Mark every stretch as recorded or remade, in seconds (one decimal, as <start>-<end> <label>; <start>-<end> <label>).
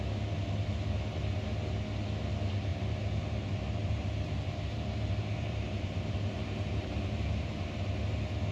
0.0-2.7 recorded; 2.7-7.3 remade; 7.3-8.5 recorded